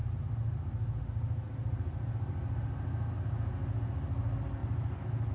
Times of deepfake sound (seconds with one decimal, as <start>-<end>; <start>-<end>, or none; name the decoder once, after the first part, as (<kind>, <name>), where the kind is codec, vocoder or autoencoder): none